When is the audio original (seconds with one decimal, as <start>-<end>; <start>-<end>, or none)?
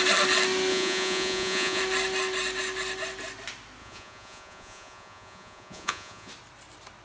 0.0-0.7; 1.8-3.8; 6.3-7.0